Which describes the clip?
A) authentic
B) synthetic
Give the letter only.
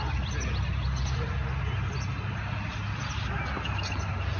A